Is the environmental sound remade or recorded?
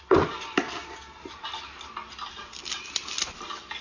recorded